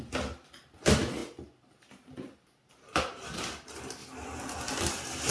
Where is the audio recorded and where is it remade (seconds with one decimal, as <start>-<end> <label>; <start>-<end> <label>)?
0.0-5.3 recorded